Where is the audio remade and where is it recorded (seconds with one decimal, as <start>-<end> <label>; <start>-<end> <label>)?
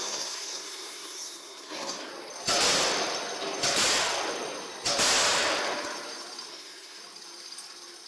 0.0-2.1 remade; 2.1-6.5 recorded; 6.5-7.0 remade; 7.0-8.1 recorded